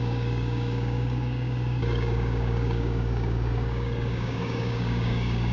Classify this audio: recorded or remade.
remade